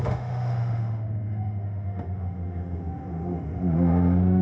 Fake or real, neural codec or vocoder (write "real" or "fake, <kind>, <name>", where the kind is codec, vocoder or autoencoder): fake, autoencoder, DAC-VAE